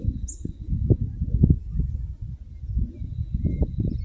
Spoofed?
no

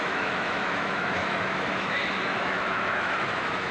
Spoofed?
yes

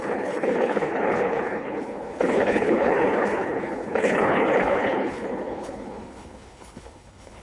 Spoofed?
yes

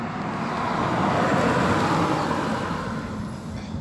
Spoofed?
no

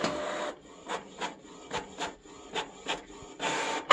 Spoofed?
no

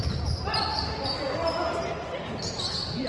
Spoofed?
no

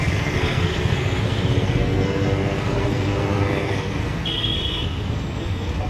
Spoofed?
yes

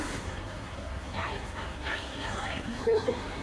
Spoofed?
yes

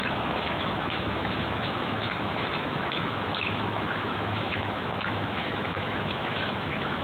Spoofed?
yes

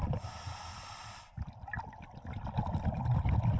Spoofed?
no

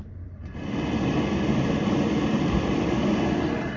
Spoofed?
yes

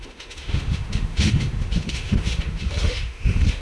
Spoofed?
yes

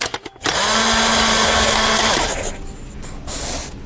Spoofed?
no